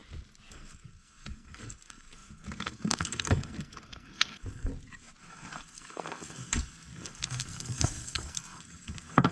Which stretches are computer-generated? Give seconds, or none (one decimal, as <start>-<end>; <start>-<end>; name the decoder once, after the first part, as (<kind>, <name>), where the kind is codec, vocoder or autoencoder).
0.5-4.7 (codec, SNAC); 5.2-9.3